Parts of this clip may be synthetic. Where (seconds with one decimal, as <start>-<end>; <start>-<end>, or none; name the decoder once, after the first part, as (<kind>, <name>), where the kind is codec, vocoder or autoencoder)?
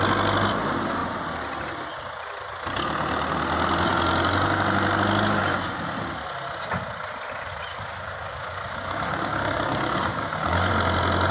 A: 7.7-10.7 (codec, DAC)